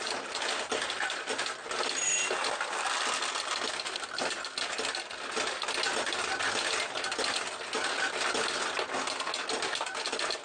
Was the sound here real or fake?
real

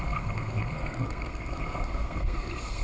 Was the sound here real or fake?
fake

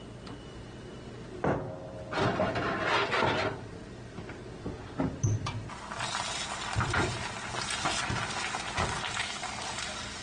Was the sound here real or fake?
real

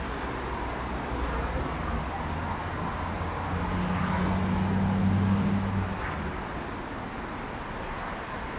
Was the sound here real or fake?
real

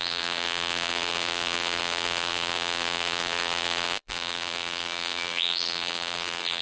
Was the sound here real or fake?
fake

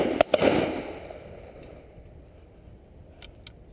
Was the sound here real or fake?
real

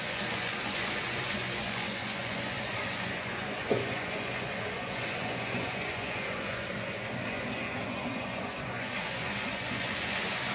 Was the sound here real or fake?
fake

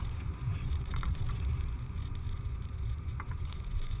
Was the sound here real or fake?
fake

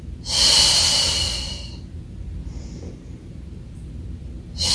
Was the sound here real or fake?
fake